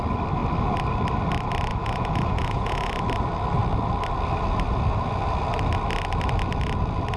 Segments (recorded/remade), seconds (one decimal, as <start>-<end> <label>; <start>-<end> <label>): 0.0-1.7 recorded; 1.7-2.9 remade; 2.9-7.2 recorded